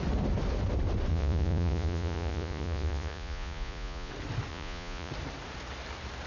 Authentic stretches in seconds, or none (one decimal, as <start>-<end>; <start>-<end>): 0.0-1.1; 4.1-4.5; 5.1-6.3